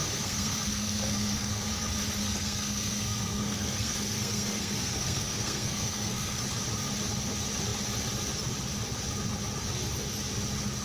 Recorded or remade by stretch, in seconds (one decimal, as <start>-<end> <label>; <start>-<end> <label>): 0.0-1.7 remade; 1.7-2.2 recorded; 2.2-6.4 remade; 6.4-10.8 recorded